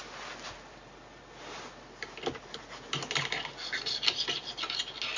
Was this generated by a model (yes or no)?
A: no